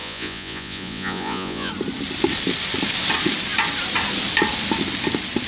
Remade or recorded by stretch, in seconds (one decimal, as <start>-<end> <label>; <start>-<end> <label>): 0.0-1.7 remade; 1.7-5.5 recorded